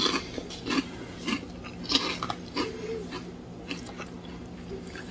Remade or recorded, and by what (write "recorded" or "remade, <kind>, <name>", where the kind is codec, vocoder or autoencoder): recorded